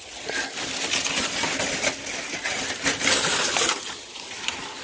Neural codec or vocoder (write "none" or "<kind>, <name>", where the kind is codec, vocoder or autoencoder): none